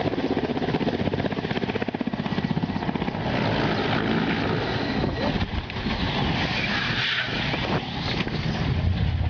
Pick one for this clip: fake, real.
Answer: real